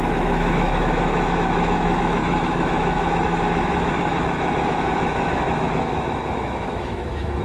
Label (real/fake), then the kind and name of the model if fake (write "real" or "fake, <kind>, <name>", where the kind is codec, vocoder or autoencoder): fake, autoencoder, DAC-VAE